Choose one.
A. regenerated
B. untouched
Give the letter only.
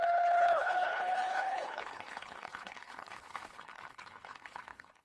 A